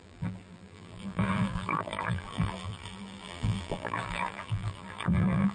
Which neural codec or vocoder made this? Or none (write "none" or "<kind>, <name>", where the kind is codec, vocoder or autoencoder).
vocoder, BigVGAN v2